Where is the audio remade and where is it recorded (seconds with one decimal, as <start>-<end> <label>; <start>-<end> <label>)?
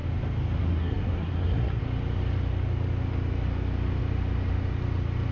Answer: 0.0-0.6 recorded; 0.6-1.8 remade; 1.8-5.3 recorded